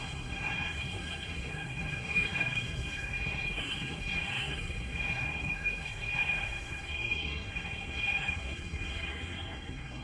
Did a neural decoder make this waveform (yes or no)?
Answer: yes